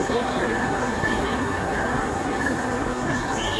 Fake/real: fake